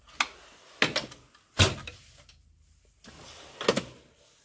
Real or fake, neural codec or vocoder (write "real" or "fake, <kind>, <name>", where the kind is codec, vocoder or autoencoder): real